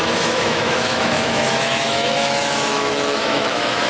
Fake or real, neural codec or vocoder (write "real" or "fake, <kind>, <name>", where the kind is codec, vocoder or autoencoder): fake, autoencoder, DAC-VAE